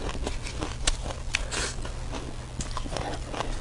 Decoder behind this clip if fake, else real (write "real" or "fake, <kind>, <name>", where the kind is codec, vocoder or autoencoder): real